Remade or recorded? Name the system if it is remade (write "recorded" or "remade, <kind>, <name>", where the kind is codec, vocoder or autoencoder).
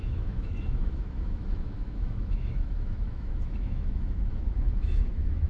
remade, autoencoder, DAC-VAE